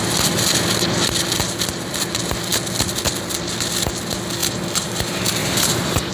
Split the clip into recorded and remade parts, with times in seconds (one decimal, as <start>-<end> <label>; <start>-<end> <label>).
0.0-5.4 recorded; 5.4-6.1 remade